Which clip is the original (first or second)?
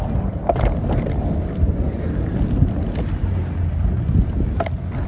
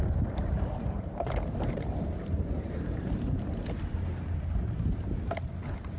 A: first